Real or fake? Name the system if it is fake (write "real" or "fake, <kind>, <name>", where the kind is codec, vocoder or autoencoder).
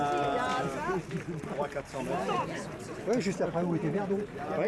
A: real